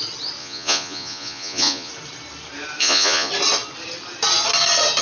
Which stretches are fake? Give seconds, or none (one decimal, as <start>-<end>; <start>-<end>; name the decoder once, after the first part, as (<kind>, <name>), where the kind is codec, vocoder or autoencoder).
0.4-1.9 (vocoder, Vocos); 2.8-3.3